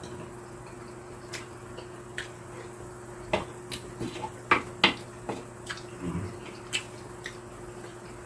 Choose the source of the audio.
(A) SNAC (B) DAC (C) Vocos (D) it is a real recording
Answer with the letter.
D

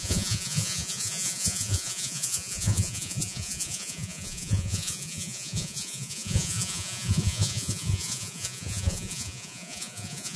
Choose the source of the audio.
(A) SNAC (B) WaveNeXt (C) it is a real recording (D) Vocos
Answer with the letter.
D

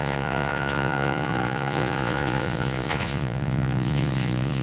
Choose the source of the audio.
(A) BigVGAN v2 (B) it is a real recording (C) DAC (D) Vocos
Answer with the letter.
D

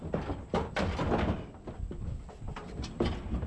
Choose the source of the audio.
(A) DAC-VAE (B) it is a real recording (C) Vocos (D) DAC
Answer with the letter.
B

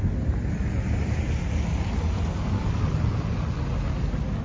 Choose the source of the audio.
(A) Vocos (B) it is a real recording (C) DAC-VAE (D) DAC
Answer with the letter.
B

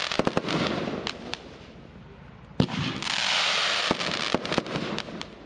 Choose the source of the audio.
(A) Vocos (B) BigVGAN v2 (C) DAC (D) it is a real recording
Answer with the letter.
D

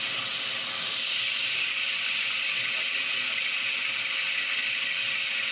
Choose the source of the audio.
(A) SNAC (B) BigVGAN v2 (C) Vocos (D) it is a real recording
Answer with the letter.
D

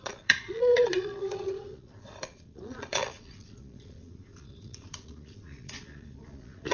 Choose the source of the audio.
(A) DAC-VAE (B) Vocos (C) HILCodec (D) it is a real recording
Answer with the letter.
B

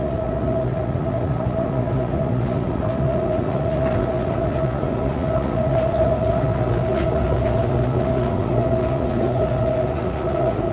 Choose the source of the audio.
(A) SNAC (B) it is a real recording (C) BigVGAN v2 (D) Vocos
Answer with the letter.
D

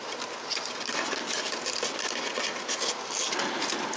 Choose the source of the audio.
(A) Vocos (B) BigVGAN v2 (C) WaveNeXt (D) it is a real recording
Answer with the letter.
D